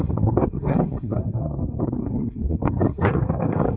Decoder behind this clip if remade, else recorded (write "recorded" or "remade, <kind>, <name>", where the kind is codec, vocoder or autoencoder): remade, codec, SNAC